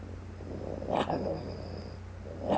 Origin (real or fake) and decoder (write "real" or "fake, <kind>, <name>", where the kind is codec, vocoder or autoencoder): real